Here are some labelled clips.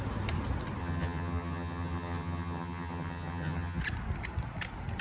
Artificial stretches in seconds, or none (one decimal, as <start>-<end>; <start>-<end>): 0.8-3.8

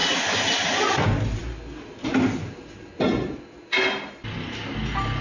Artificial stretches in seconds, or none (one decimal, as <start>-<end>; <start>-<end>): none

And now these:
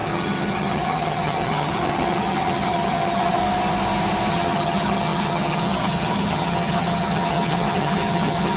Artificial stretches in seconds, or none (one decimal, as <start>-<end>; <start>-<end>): 0.0-3.4; 4.3-8.6

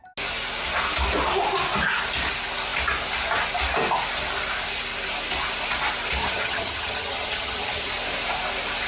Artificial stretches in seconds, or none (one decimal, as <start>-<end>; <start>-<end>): 6.2-7.9

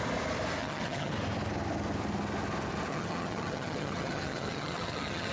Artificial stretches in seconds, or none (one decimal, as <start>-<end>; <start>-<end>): 0.6-1.1; 2.9-5.3